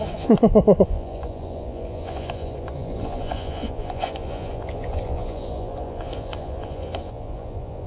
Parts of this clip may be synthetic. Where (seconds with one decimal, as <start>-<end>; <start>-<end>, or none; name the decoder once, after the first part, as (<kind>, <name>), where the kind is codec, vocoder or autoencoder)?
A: 0.0-7.9 (vocoder, Vocos)